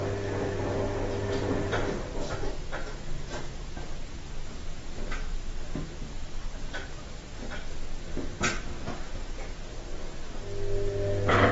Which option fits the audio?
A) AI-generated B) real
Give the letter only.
B